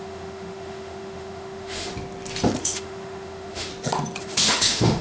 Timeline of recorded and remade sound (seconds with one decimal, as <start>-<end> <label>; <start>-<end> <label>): 0.0-1.9 remade; 1.9-2.6 recorded; 2.6-3.7 remade; 3.7-4.2 recorded; 4.2-5.0 remade